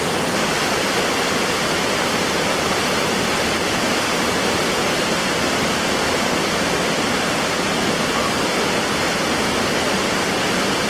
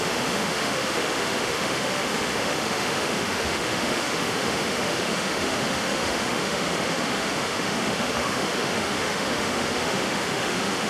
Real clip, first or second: first